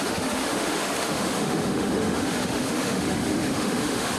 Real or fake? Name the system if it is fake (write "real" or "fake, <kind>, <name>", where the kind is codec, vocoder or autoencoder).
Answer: fake, autoencoder, DAC-VAE